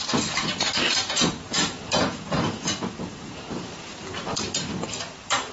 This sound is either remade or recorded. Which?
remade